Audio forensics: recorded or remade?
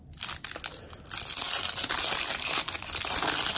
recorded